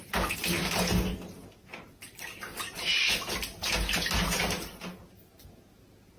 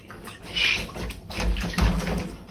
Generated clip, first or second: second